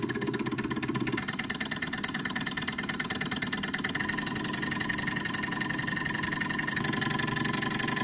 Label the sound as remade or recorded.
recorded